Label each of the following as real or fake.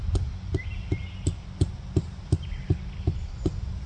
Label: real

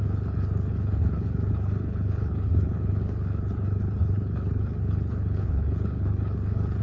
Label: fake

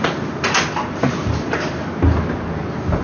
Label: real